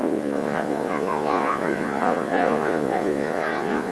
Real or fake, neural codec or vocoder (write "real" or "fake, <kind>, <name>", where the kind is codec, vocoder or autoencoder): fake, vocoder, Vocos